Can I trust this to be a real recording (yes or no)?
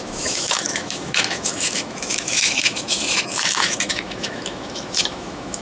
no